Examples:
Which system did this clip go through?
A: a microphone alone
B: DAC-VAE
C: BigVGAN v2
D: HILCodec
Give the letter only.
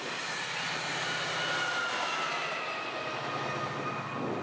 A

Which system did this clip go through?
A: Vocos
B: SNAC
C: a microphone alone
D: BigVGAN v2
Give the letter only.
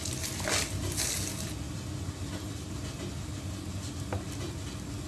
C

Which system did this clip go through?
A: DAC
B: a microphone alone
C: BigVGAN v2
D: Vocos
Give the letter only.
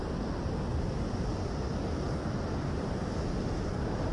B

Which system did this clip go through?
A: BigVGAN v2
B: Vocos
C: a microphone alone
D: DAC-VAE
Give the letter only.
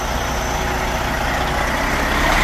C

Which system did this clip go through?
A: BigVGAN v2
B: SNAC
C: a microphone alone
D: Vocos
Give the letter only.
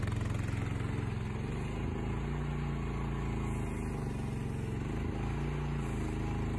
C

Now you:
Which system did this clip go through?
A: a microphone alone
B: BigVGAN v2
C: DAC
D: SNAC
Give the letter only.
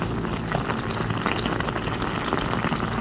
A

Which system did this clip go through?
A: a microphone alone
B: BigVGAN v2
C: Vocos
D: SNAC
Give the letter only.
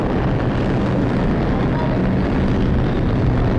A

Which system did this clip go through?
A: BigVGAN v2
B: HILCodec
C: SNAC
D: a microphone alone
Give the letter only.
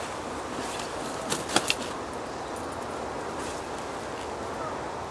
D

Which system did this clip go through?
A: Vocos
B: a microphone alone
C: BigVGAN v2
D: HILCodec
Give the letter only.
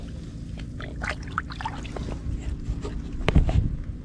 B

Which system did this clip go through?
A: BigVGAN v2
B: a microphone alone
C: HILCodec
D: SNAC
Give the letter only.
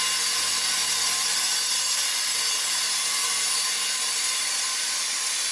A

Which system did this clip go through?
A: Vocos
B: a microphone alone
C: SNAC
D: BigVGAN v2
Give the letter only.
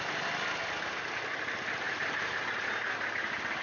B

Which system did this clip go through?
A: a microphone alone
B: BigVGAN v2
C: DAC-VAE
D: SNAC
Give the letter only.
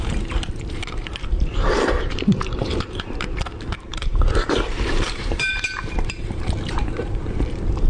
B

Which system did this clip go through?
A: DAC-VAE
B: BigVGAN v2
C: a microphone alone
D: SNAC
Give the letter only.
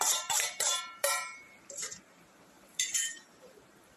B